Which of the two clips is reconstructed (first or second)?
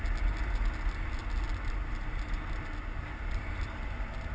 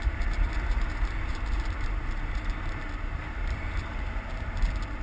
second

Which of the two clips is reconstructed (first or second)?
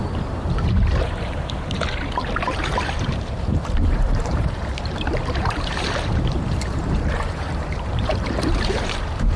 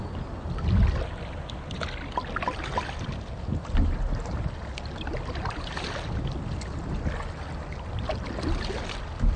first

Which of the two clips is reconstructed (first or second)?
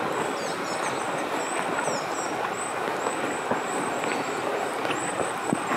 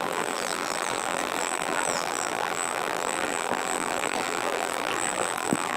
second